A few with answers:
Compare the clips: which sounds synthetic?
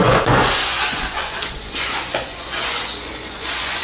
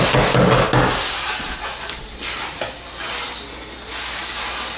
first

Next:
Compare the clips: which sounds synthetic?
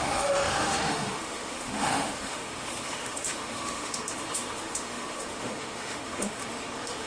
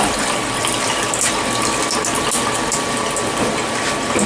first